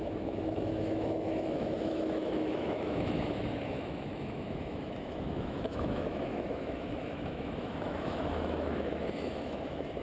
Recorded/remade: remade